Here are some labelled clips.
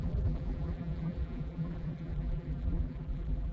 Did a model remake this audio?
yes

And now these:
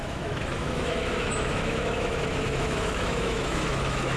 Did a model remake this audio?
yes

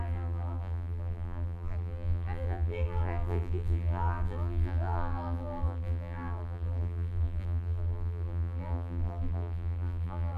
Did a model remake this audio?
yes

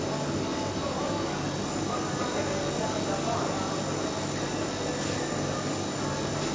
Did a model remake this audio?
no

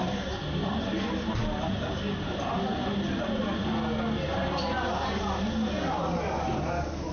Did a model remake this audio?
no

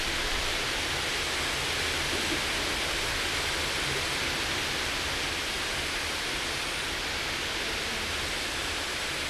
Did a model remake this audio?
no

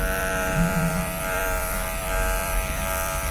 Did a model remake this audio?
yes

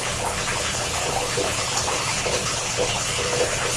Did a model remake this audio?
yes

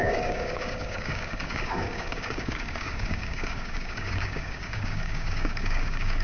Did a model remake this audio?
yes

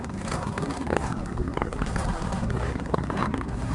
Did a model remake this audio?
yes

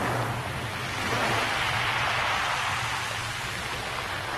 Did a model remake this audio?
no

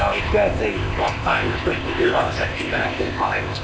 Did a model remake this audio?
yes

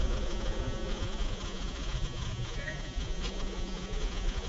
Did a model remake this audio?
yes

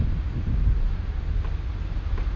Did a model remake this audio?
no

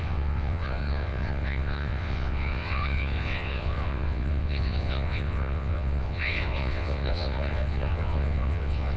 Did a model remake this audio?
yes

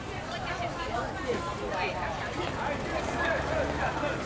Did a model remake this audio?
yes